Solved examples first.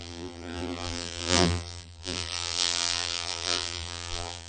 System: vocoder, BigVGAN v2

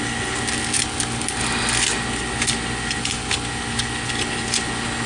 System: none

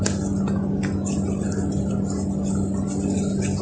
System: none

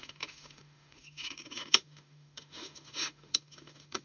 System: autoencoder, DAC-VAE